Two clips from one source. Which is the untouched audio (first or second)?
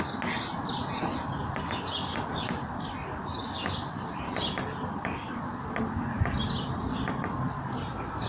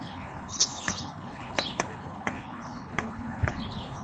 first